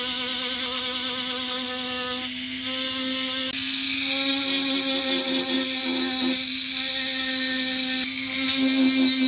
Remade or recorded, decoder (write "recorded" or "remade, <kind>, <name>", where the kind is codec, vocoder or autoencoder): recorded